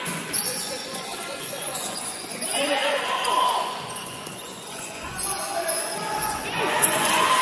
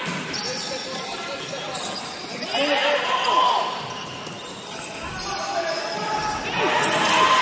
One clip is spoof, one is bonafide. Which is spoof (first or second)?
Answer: first